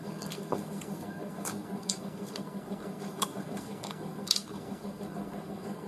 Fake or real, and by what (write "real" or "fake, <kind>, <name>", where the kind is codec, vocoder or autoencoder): fake, codec, SNAC